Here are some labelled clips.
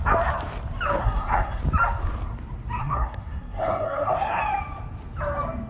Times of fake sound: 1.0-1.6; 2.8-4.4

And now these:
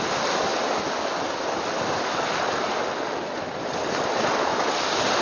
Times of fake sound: none

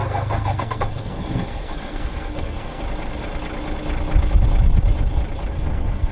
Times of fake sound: 0.0-2.8; 5.5-6.1

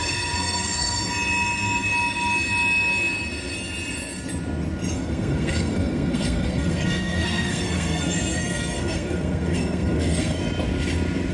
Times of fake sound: 0.0-1.0; 4.9-10.4

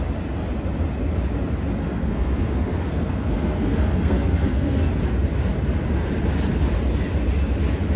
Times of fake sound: 1.8-4.9

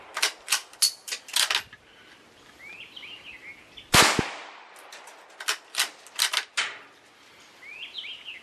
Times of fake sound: none